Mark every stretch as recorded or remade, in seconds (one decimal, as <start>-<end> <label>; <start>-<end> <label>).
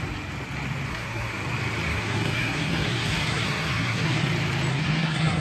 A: 0.0-0.9 recorded; 0.9-1.4 remade; 1.4-1.9 recorded; 1.9-4.3 remade; 4.3-4.7 recorded; 4.7-5.4 remade